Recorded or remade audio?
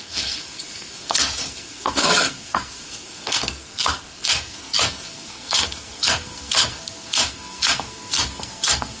remade